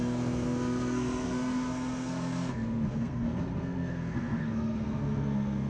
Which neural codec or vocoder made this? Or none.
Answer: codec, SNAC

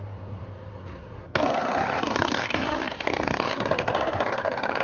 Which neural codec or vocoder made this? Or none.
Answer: codec, SNAC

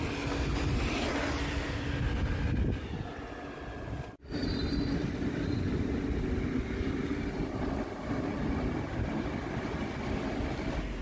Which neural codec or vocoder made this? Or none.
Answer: none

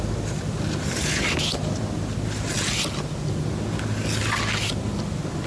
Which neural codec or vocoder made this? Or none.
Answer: none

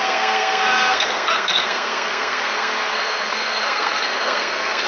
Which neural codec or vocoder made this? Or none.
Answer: codec, SNAC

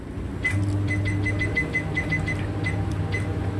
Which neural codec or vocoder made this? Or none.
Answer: none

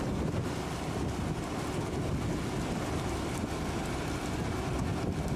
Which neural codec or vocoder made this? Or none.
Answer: none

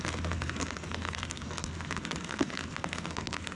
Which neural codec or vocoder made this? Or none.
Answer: codec, SNAC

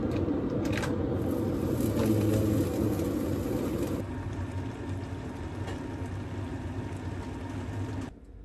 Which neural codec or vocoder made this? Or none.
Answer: none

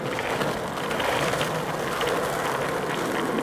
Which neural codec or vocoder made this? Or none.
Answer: none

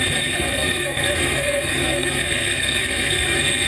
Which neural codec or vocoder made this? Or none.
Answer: codec, SNAC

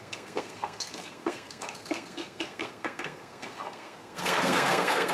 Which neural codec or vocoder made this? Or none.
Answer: codec, SNAC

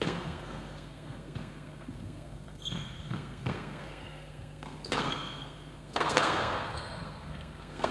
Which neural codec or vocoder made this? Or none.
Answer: codec, SNAC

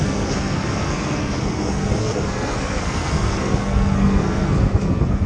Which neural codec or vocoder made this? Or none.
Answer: codec, SNAC